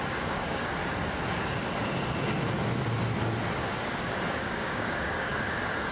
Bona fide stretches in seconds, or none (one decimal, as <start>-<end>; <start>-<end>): 0.8-4.3; 5.3-5.9

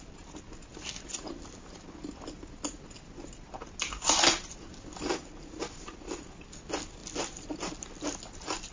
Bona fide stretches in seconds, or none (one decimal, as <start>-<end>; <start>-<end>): 0.0-8.7

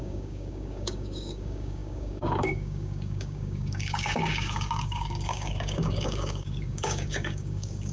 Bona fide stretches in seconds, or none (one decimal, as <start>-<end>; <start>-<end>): none

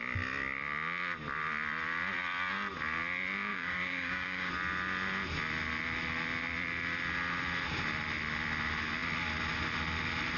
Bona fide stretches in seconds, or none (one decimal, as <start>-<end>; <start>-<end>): 0.0-3.5; 4.5-10.4